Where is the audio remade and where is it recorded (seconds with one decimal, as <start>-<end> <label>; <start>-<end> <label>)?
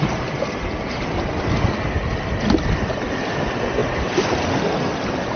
0.0-5.4 recorded